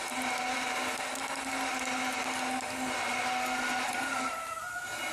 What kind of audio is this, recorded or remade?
recorded